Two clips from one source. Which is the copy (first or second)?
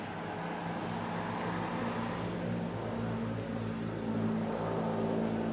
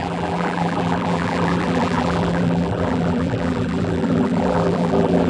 second